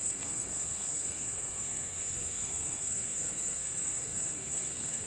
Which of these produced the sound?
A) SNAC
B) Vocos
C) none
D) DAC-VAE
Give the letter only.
A